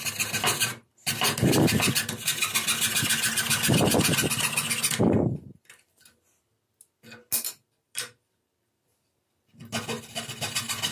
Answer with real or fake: real